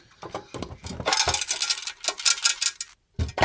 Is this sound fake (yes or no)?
no